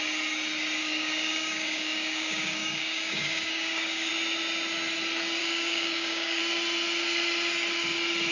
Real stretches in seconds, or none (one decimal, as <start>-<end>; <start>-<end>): 0.0-0.8; 4.1-5.4; 6.4-8.3